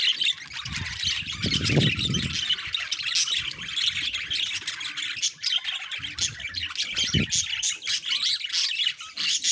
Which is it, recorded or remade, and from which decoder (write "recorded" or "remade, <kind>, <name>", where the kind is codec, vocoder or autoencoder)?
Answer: recorded